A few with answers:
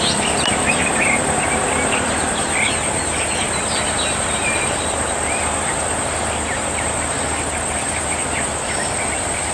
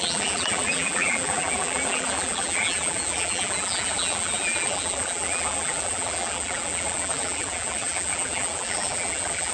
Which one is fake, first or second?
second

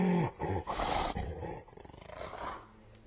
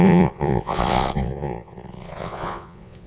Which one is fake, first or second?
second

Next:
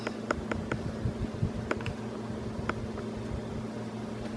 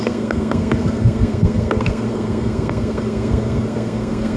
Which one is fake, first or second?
second